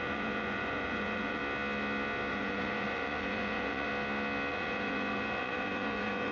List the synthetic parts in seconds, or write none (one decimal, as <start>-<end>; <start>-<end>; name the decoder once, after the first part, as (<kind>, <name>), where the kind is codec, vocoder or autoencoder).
0.0-1.4 (vocoder, Vocos); 2.3-3.9; 4.5-6.3